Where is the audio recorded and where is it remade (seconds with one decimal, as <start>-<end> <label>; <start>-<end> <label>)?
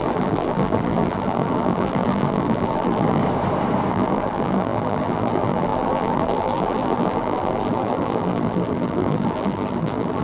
0.0-3.2 remade; 3.2-3.9 recorded; 3.9-10.2 remade